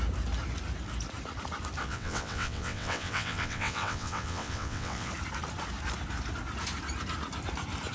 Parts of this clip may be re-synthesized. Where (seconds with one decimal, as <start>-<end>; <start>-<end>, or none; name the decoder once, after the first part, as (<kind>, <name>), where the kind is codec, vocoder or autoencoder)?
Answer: 1.8-5.1 (vocoder, WaveNeXt)